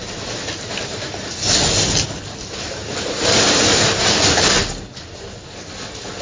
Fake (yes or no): no